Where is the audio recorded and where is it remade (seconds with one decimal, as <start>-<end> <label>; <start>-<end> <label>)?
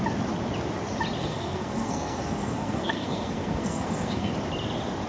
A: 0.0-1.2 recorded; 1.2-4.3 remade; 4.3-5.1 recorded